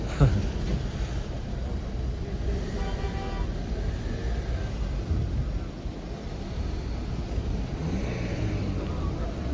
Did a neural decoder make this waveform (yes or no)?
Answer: no